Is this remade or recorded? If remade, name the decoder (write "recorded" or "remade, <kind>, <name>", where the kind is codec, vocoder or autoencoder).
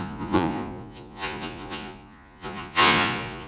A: remade, vocoder, Vocos